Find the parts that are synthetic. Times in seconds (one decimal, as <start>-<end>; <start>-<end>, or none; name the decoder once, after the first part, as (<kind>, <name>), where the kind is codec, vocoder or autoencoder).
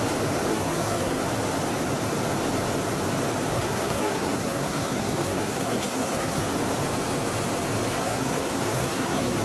0.5-1.2 (codec, SNAC); 3.5-6.4; 7.9-9.4